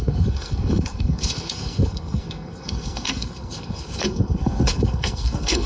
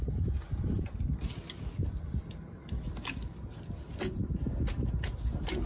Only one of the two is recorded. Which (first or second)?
second